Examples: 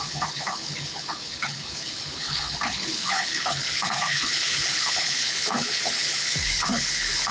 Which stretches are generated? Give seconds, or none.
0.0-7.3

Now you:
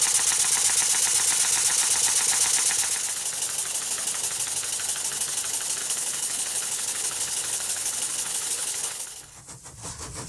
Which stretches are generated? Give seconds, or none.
5.8-9.4

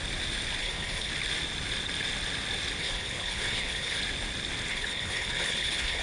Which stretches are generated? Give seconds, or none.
0.6-1.1; 2.8-4.0; 4.7-6.0

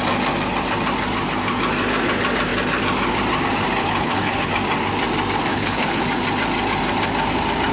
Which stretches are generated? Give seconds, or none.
3.8-4.5; 5.5-6.0

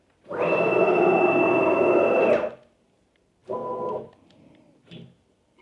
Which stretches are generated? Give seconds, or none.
none

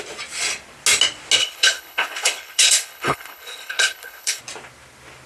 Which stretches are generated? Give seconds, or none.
1.4-4.4

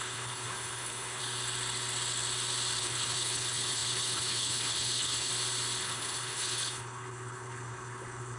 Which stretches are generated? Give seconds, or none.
0.0-1.2; 2.8-5.3; 5.8-8.4

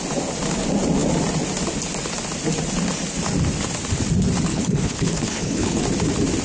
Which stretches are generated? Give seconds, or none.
4.5-5.8